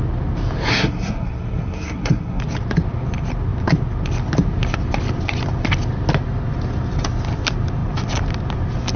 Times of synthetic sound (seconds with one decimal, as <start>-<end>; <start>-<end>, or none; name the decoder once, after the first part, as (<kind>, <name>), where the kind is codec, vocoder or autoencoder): 0.7-2.4 (codec, SNAC)